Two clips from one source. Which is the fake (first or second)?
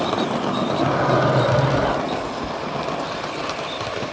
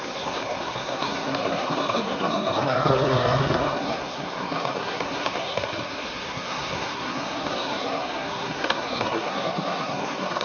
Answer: second